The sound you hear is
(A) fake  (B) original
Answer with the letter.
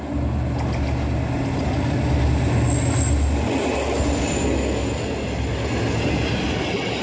B